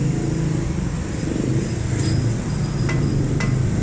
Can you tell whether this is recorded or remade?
recorded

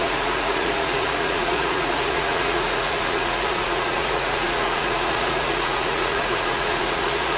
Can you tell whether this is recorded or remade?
remade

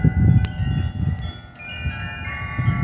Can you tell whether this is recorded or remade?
recorded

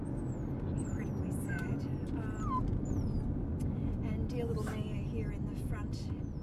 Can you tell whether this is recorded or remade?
recorded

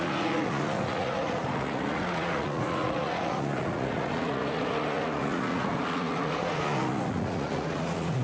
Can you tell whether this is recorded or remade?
remade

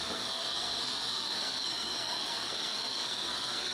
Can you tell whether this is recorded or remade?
remade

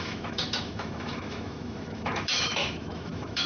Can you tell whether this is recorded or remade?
remade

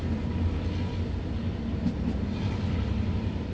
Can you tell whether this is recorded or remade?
recorded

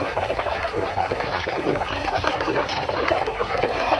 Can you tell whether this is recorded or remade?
remade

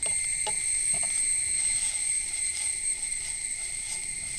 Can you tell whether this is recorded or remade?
recorded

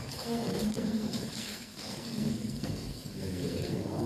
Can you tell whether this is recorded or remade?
remade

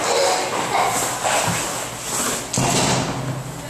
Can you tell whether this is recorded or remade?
recorded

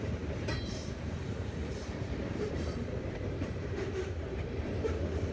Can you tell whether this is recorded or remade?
remade